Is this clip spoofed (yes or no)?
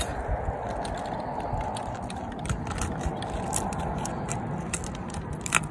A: no